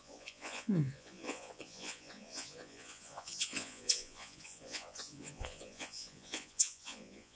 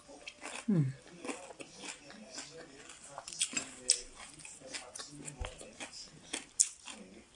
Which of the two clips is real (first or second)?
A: second